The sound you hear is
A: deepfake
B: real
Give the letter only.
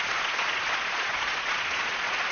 A